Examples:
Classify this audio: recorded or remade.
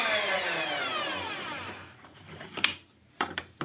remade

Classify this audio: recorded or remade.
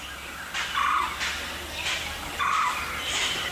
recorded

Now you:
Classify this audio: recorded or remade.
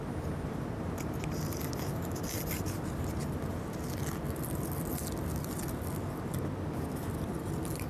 recorded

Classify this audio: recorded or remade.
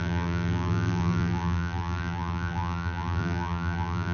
remade